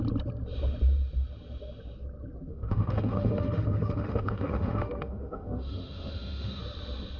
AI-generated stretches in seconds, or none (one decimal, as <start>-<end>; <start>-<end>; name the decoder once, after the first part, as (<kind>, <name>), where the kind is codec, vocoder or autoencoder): 2.5-6.6 (autoencoder, DAC-VAE)